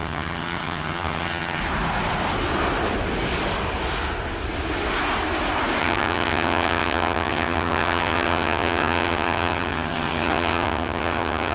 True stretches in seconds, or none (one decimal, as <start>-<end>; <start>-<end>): 1.6-5.8